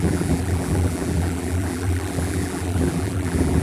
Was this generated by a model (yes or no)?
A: yes